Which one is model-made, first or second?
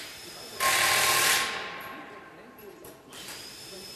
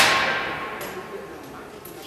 first